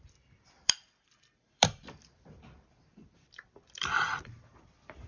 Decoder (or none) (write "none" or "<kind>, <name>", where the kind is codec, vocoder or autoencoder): vocoder, BigVGAN v2